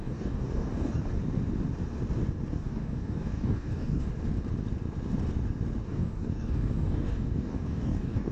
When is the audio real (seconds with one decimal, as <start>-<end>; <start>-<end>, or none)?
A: 1.0-2.5; 4.1-5.8